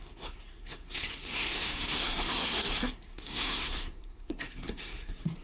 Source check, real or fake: fake